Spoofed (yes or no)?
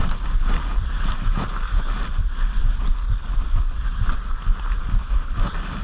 no